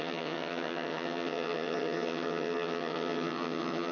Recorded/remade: remade